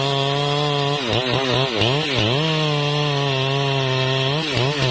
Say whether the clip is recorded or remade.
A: recorded